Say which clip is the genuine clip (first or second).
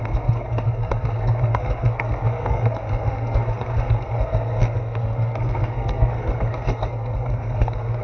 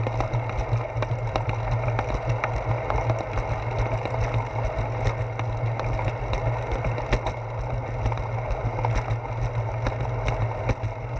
second